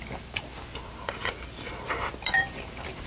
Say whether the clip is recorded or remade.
remade